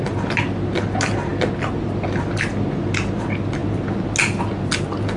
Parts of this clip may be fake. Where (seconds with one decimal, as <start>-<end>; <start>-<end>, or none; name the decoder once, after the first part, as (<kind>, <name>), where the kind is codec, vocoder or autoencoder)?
none